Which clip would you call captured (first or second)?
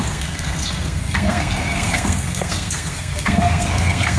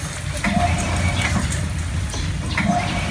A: second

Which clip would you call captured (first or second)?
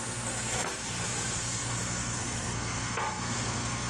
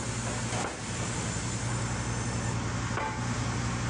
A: second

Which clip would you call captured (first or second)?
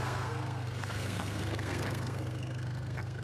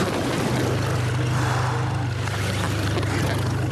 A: second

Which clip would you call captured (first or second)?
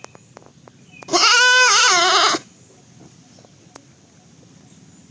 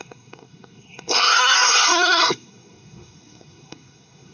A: first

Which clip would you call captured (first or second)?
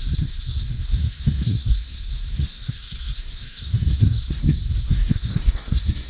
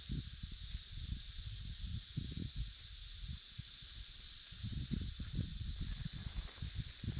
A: second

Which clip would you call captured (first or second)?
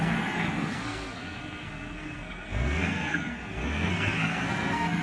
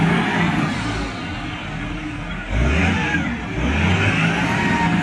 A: second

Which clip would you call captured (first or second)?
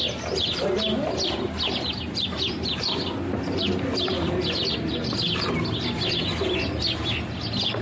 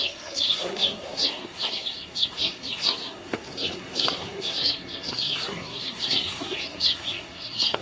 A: first